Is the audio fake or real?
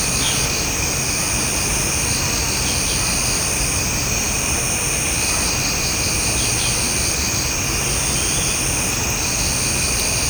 real